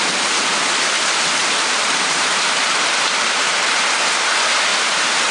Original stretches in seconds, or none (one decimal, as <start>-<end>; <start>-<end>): 0.0-1.4; 4.3-4.7